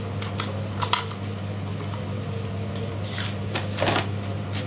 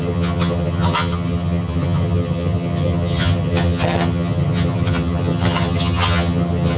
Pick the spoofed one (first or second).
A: second